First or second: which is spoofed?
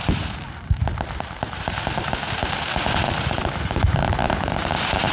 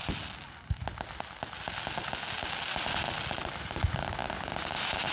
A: first